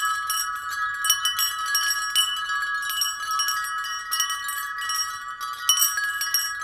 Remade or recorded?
recorded